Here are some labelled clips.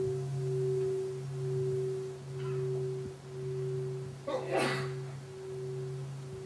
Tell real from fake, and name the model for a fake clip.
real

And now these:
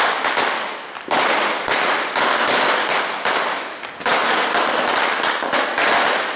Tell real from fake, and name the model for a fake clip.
real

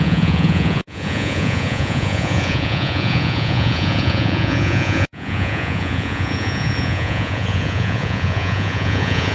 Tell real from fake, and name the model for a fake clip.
fake, vocoder, Vocos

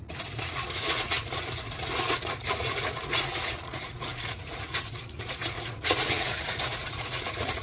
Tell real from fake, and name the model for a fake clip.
fake, vocoder, Vocos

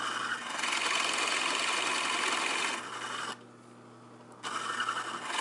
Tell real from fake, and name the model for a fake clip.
real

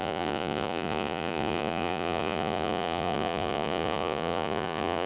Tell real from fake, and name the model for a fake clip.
fake, vocoder, Vocos